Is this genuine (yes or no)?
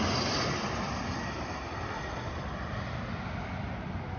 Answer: yes